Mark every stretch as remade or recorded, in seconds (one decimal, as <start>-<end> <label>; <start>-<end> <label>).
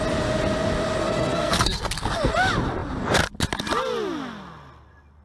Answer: 0.0-1.0 recorded; 1.0-2.3 remade; 2.3-5.2 recorded